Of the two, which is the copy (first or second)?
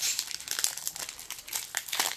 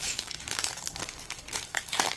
second